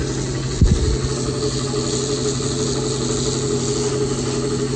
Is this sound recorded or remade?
recorded